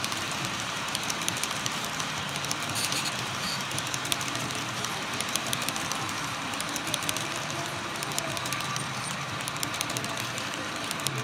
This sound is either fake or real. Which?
fake